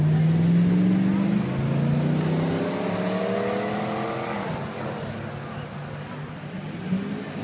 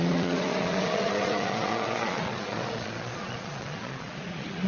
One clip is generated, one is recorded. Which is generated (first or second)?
second